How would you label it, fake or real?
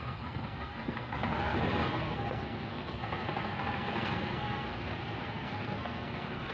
fake